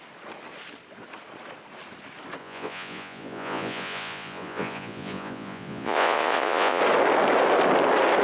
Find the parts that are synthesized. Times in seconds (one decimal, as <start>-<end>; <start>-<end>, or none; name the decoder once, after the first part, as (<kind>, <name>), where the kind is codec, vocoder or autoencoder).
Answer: 2.4-6.8 (vocoder, Vocos)